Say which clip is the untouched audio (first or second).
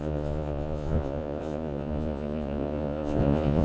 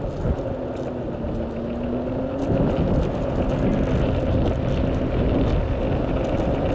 second